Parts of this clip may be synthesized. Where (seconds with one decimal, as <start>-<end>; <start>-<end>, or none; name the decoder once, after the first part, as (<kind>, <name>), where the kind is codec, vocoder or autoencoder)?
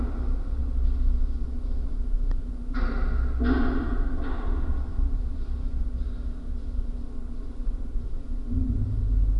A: none